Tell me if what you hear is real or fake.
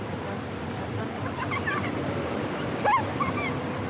fake